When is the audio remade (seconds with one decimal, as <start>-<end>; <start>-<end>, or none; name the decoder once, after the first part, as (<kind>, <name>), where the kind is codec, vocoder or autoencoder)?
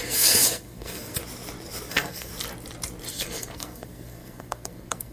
0.0-1.2 (codec, SNAC); 1.9-2.3; 3.1-5.1